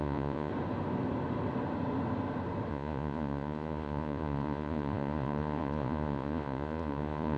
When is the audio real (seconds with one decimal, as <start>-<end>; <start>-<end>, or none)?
0.5-2.7